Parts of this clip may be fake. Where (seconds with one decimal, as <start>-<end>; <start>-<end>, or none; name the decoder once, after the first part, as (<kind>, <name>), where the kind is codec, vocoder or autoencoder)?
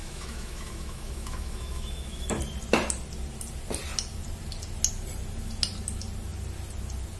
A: 0.0-2.3 (autoencoder, DAC-VAE)